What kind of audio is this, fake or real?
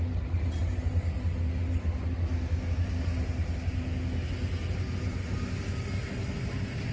real